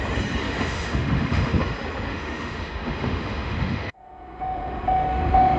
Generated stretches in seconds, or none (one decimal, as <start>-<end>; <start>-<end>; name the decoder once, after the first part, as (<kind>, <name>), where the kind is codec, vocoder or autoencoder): 0.4-1.6 (autoencoder, DAC-VAE); 2.1-5.6